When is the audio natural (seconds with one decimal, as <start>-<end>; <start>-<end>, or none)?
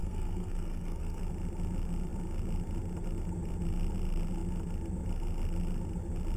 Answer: 1.2-6.4